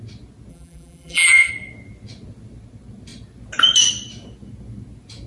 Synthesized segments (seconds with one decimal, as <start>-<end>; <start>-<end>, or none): 0.5-1.5